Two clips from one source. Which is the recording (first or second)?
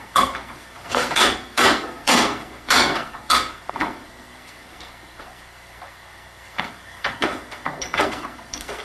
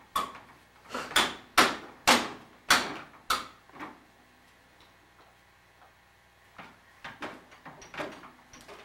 second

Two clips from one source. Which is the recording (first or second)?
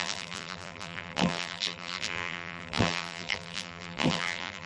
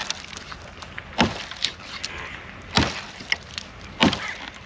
second